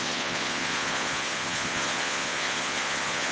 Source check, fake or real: fake